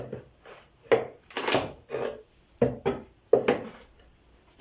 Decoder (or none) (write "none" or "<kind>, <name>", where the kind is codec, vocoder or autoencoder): none